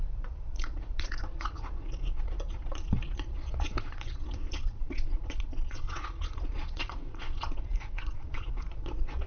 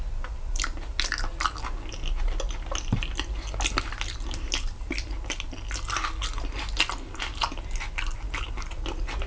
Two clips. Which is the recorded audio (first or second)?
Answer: second